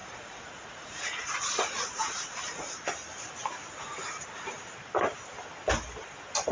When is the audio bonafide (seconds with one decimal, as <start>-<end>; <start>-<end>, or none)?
2.7-6.5